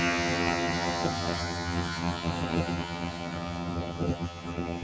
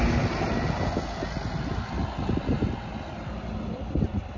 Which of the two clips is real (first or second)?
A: second